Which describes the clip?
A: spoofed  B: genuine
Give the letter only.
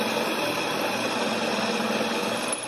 B